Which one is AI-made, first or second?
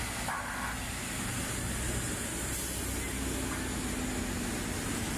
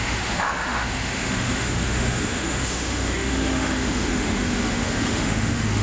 second